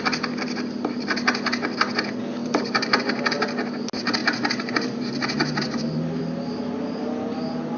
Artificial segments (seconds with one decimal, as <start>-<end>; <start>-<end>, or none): 2.4-3.0; 4.2-6.2